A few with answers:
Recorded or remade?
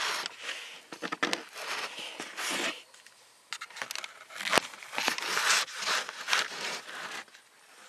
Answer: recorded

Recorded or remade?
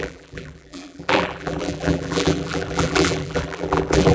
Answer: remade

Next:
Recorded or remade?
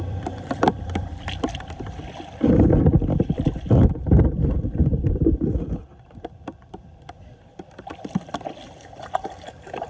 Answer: remade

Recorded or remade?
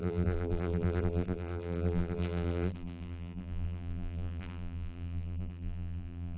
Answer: remade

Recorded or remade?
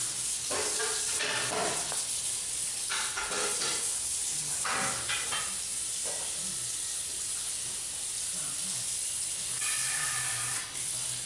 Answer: recorded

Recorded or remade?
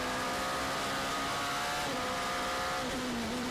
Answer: recorded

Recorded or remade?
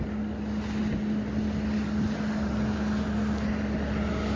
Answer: recorded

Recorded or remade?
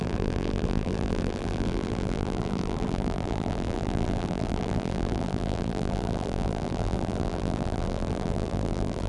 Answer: remade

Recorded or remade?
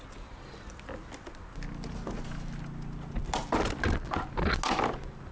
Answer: recorded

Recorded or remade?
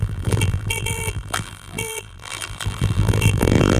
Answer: remade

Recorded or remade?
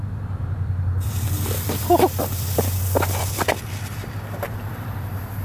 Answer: remade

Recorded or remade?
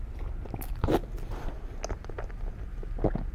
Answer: recorded